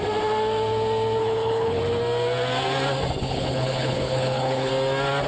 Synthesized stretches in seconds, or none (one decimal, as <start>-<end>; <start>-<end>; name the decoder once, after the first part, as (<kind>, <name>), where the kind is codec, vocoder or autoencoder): 1.2-1.8 (codec, HILCodec); 3.2-4.7